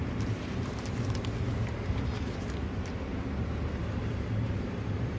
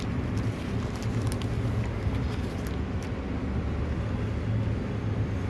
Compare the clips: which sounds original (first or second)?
second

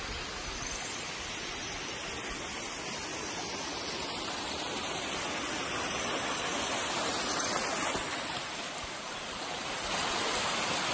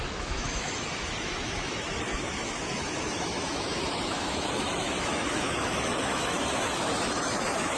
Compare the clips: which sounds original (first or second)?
first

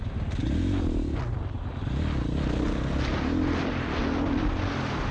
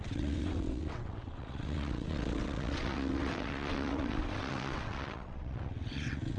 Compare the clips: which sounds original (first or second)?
first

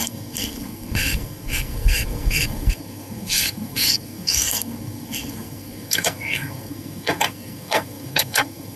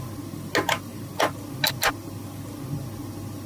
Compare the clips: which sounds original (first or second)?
second